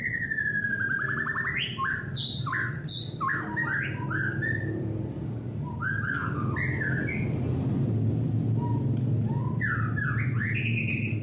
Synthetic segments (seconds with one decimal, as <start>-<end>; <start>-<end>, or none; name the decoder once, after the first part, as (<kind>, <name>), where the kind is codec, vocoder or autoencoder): none